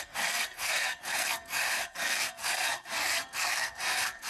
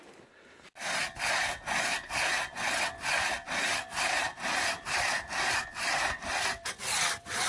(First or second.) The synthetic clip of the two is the first